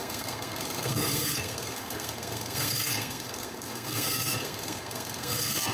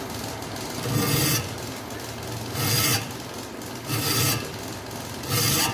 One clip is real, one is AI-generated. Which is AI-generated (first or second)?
first